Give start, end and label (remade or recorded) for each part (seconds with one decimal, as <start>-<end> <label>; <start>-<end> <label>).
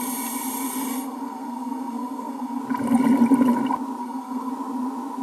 0.0-0.9 recorded; 0.9-2.6 remade; 2.6-4.0 recorded; 4.0-4.5 remade; 4.5-5.2 recorded